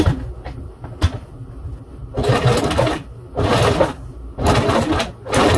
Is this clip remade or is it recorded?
recorded